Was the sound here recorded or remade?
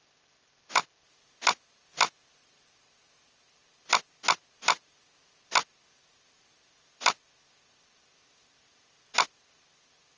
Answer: recorded